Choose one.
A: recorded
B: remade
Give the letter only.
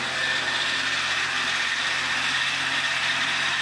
B